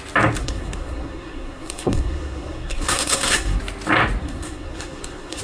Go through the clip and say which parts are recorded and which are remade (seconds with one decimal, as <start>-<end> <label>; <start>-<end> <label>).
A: 0.0-0.4 recorded; 0.4-3.6 remade; 3.6-4.2 recorded; 4.2-5.4 remade